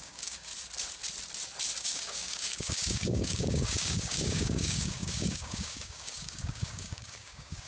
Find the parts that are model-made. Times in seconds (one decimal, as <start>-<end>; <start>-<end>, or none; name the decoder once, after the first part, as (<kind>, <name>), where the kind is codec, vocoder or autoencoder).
0.0-0.5 (codec, DAC); 1.8-7.7